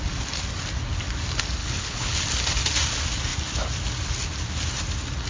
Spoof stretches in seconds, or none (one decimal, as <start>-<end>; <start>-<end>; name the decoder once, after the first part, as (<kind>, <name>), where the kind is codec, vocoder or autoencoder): 1.6-2.2 (codec, HILCodec)